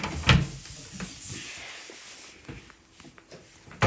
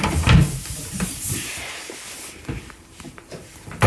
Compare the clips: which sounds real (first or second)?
first